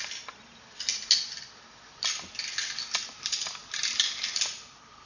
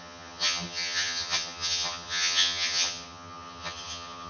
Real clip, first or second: first